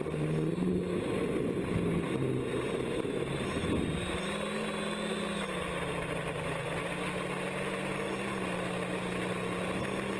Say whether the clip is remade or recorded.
recorded